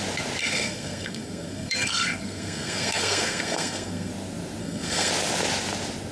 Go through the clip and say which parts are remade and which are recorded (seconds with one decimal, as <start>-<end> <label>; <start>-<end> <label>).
0.0-0.4 recorded; 0.4-4.1 remade; 4.1-4.6 recorded; 4.6-5.1 remade; 5.1-6.1 recorded

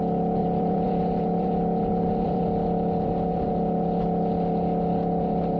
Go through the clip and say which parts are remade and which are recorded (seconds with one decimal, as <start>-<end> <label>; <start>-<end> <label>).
0.0-0.4 recorded; 0.4-2.4 remade; 2.4-5.6 recorded

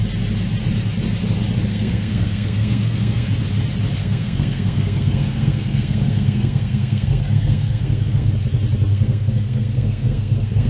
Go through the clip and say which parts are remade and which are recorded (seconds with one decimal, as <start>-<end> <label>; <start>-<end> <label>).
0.0-1.7 recorded; 1.7-3.3 remade; 3.3-4.0 recorded; 4.0-8.3 remade; 8.3-8.9 recorded; 8.9-10.7 remade

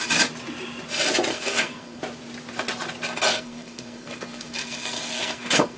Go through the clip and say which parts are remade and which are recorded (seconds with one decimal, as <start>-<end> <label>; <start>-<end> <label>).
0.0-1.3 recorded; 1.3-2.0 remade; 2.0-3.3 recorded; 3.3-5.8 remade

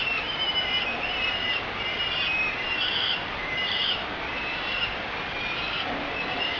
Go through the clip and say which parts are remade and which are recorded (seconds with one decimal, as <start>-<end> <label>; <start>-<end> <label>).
0.0-6.6 remade